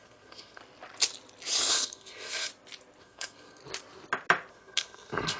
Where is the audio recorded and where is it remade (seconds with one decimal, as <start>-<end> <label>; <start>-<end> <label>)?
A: 0.0-0.6 remade; 0.6-1.7 recorded; 1.7-2.5 remade; 2.5-3.0 recorded; 3.0-3.6 remade; 3.6-4.5 recorded; 4.5-5.4 remade

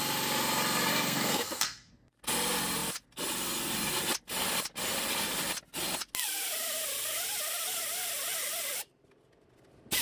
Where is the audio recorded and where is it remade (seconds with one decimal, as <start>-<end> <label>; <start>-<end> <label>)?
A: 0.0-0.9 recorded; 0.9-1.9 remade; 1.9-10.0 recorded

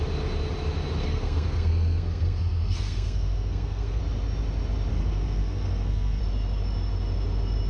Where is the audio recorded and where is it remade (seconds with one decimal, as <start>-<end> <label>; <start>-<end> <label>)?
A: 0.0-1.0 recorded; 1.0-4.0 remade; 4.0-4.9 recorded; 4.9-6.2 remade; 6.2-7.7 recorded

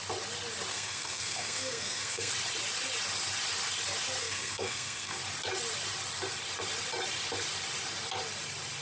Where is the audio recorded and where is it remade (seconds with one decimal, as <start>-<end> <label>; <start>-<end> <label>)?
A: 0.0-0.7 recorded; 0.7-2.3 remade; 2.3-4.2 recorded; 4.2-5.2 remade; 5.2-8.8 recorded

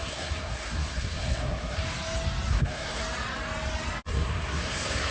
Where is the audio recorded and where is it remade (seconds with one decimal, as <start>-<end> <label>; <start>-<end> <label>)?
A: 0.0-1.8 remade; 1.8-2.5 recorded; 2.5-3.0 remade; 3.0-4.1 recorded; 4.1-5.1 remade

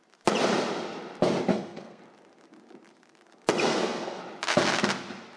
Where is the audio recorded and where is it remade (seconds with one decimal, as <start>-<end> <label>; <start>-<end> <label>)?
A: 0.0-1.5 recorded; 1.5-2.0 remade; 2.0-3.7 recorded; 3.7-4.2 remade; 4.2-5.4 recorded